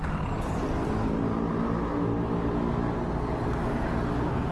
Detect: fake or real real